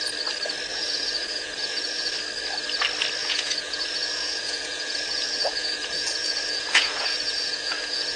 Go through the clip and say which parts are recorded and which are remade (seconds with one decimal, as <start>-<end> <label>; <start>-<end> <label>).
0.0-0.7 recorded; 0.7-2.1 remade; 2.1-3.2 recorded; 3.2-8.2 remade